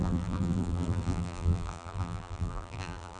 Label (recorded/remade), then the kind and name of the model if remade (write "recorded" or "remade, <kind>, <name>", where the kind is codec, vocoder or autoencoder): remade, vocoder, BigVGAN v2